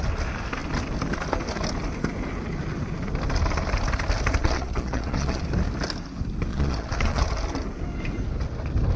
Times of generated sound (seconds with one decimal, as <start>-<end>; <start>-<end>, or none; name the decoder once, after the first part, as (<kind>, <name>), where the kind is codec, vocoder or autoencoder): 4.4-5.4 (vocoder, Vocos); 6.5-7.2